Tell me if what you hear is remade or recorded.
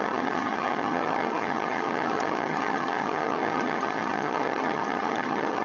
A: remade